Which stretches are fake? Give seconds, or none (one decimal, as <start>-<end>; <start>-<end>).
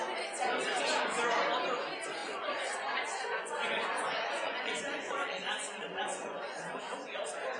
2.2-6.8